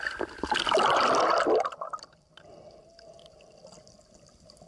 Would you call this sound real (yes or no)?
yes